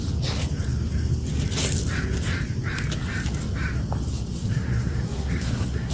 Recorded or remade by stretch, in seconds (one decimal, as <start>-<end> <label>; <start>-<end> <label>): 0.0-4.4 recorded; 4.4-5.9 remade